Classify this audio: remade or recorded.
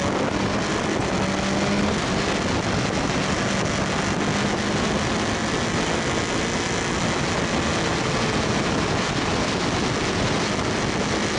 recorded